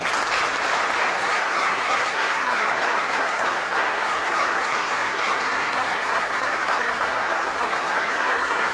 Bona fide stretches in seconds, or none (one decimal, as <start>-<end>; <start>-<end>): 0.0-1.1